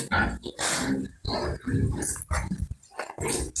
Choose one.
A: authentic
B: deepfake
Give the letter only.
A